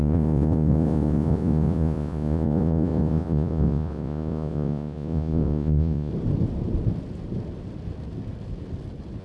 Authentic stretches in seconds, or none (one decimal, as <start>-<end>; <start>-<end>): 6.1-9.2